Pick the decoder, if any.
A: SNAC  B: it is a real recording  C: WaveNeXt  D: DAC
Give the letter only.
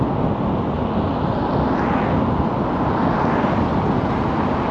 B